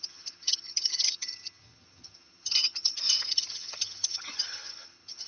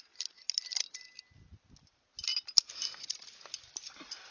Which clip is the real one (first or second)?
second